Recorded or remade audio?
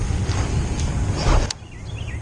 recorded